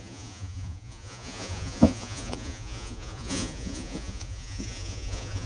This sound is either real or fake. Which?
fake